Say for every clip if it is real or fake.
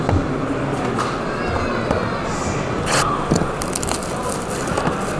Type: real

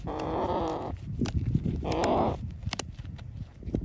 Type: fake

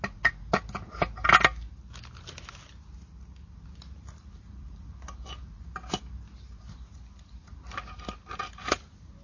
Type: real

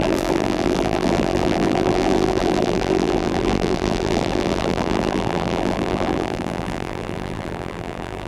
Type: fake